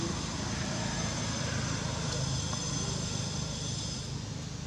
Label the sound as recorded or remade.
recorded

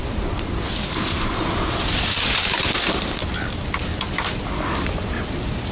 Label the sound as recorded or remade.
recorded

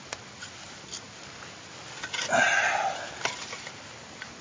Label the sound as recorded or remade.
recorded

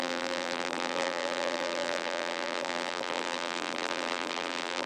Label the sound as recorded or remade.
remade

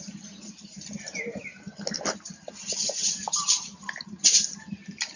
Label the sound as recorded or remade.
recorded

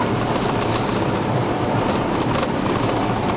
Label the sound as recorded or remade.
recorded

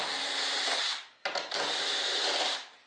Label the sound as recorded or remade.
recorded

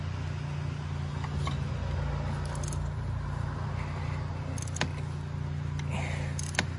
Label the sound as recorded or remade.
recorded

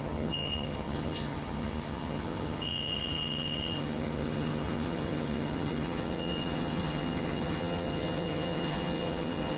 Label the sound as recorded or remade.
remade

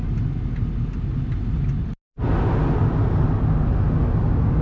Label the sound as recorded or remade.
recorded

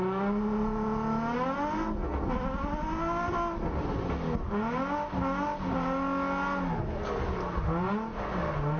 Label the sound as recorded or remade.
recorded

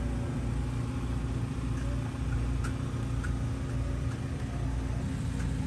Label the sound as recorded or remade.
recorded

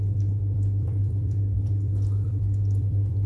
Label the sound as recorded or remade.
remade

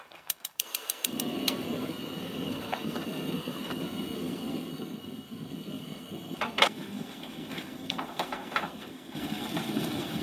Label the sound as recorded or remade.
remade